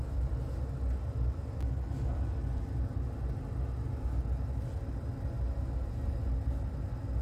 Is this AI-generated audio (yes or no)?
no